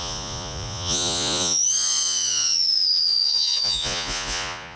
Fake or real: fake